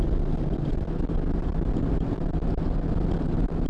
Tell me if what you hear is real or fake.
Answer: real